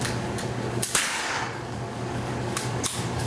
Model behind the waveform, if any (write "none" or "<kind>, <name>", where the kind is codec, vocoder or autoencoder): codec, DAC